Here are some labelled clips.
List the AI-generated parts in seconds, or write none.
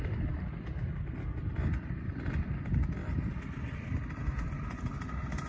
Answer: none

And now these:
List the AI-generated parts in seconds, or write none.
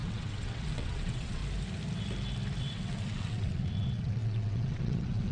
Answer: 0.0-1.4 (vocoder, WaveNeXt); 2.6-5.3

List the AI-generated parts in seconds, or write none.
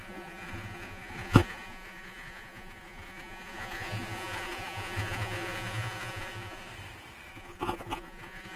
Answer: 0.0-6.7 (vocoder, Vocos); 7.3-8.6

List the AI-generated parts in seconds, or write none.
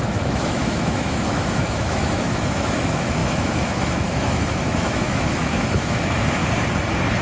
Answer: 0.0-6.4 (autoencoder, DAC-VAE)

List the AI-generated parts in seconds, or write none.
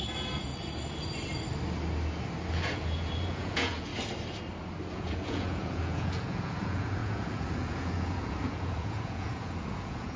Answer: 0.0-0.5 (vocoder, Vocos); 2.5-3.9; 4.9-10.2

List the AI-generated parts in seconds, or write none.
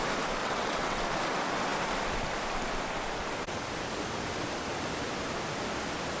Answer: 0.4-1.0 (vocoder, WaveNeXt)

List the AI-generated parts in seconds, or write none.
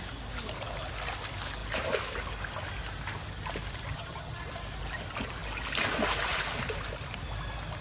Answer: 3.9-4.4 (vocoder, HiFi-GAN)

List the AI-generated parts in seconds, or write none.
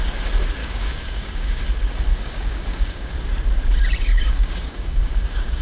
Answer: 0.6-1.6 (codec, DAC); 2.1-3.1; 4.1-5.6